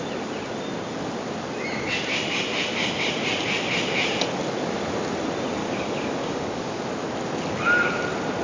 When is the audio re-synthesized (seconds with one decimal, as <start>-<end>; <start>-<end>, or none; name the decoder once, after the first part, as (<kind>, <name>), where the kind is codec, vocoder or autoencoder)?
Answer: 5.6-6.8 (codec, DAC)